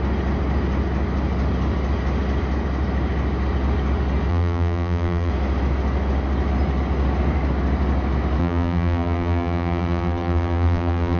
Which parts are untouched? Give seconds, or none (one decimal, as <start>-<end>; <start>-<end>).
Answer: 0.0-4.3; 5.3-8.4